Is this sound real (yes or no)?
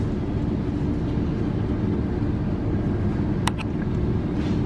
yes